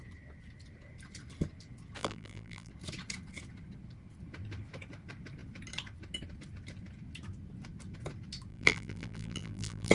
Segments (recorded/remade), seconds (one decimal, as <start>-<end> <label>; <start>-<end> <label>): 0.0-2.0 recorded; 2.0-2.7 remade; 2.7-8.5 recorded; 8.5-9.9 remade